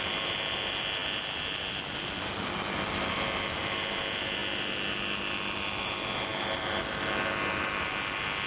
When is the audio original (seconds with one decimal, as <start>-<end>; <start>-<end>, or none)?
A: 0.0-8.5